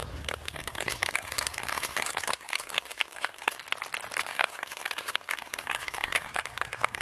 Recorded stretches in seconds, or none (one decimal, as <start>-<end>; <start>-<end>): 3.6-4.2